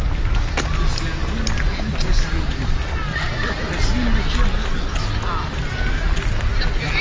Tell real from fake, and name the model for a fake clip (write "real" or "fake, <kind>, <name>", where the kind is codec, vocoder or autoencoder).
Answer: real